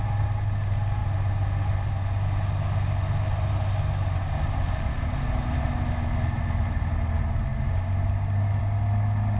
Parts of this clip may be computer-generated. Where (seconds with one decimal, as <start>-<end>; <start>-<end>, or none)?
none